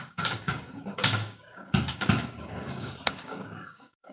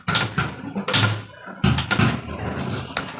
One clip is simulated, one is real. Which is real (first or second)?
second